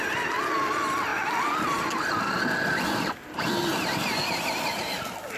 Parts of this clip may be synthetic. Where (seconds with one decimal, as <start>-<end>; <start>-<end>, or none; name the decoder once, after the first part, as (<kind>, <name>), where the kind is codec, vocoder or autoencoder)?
3.7-4.3 (vocoder, BigVGAN v2)